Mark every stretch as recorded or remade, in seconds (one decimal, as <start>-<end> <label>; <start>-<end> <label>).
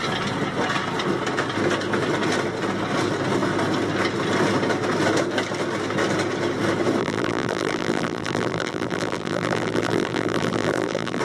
0.0-7.0 recorded; 7.0-11.2 remade